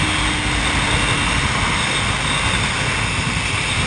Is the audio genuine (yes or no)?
yes